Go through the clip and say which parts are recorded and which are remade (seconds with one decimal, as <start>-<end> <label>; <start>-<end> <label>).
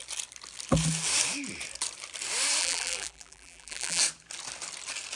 0.0-2.6 recorded; 2.6-4.0 remade; 4.0-5.2 recorded